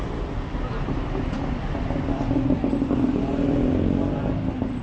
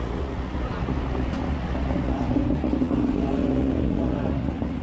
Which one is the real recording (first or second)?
first